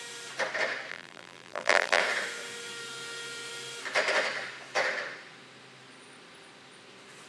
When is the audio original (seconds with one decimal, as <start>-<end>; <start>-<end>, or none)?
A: 0.0-0.9; 2.0-7.3